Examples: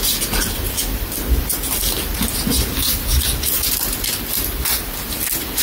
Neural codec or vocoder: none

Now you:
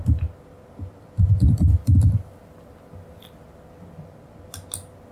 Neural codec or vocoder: none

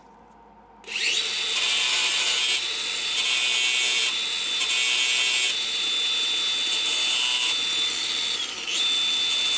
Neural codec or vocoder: none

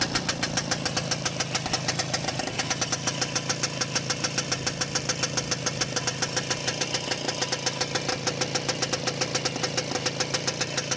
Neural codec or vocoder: none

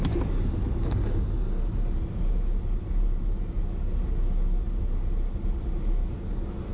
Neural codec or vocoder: none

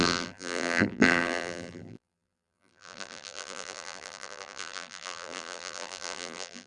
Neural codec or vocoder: vocoder, BigVGAN v2